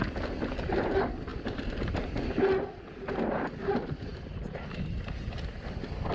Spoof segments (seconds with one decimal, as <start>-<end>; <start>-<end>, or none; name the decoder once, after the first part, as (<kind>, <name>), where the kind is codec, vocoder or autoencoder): none